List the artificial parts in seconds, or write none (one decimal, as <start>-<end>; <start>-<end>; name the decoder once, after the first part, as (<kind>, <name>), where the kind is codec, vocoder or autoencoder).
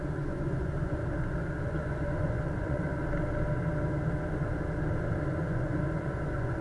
0.0-1.0 (vocoder, Vocos); 1.6-2.9; 5.2-6.6